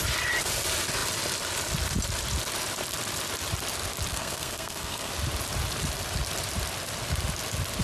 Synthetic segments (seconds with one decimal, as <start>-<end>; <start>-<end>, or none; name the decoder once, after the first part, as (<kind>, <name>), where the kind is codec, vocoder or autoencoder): 4.1-5.1 (codec, SNAC)